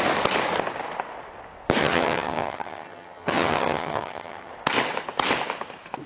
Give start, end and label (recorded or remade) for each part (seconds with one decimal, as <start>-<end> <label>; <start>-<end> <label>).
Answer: 0.0-1.8 recorded; 1.8-4.5 remade; 4.5-6.1 recorded